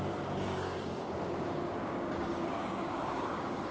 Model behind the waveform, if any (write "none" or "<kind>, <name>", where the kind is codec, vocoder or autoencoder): codec, DAC